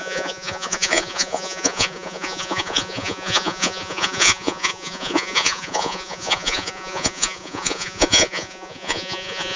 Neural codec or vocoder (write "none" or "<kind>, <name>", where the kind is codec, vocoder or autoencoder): vocoder, Vocos